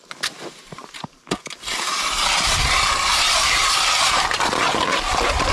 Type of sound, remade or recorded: remade